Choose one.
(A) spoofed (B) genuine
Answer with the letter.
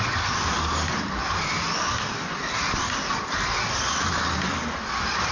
B